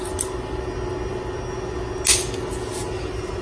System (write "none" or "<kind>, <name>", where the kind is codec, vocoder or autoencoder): none